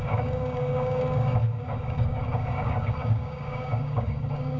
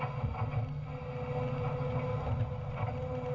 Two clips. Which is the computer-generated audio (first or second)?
first